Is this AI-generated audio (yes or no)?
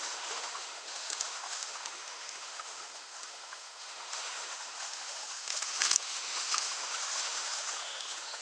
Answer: yes